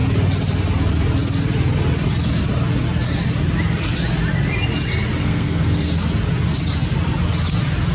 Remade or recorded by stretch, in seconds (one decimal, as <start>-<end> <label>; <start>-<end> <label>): 0.0-5.2 recorded; 5.2-5.9 remade; 5.9-7.9 recorded